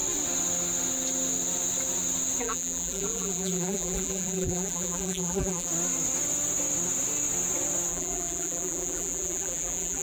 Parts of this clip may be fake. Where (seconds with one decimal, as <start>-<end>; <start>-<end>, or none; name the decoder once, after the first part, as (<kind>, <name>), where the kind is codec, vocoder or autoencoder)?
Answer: 2.4-5.7 (vocoder, BigVGAN v2); 7.9-10.0

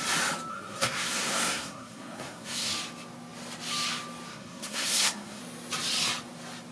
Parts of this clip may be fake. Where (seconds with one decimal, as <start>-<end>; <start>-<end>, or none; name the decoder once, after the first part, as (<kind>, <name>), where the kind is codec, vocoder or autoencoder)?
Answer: 0.5-2.7 (codec, SNAC); 4.3-5.4

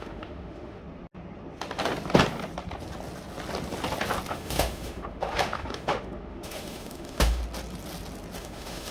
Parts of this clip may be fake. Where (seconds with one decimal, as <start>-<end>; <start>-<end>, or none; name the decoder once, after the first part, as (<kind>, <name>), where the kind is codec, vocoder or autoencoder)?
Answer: 0.0-0.8 (autoencoder, DAC-VAE); 4.3-7.4; 8.4-8.9